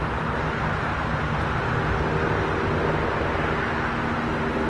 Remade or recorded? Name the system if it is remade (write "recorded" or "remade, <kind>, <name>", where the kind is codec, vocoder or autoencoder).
recorded